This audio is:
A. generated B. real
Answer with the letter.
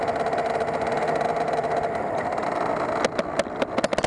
B